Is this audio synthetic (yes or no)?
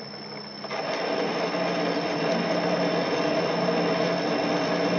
no